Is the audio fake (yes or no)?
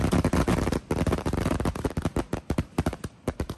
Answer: no